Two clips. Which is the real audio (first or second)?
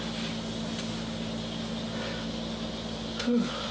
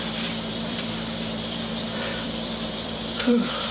first